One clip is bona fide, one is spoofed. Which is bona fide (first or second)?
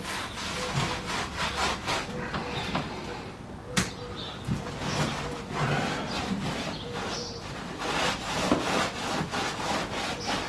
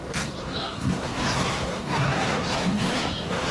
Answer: first